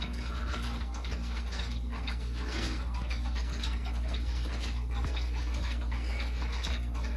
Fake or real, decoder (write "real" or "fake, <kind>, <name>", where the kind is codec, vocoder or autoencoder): fake, codec, SNAC